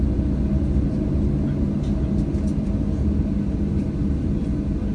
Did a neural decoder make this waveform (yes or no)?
no